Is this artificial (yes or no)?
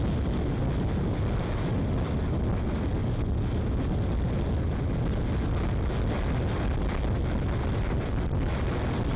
no